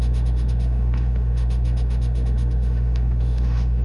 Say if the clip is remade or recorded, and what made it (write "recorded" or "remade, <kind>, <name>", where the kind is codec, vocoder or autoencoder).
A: remade, autoencoder, DAC-VAE